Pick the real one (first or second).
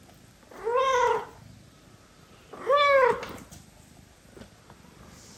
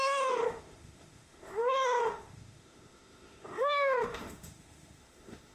first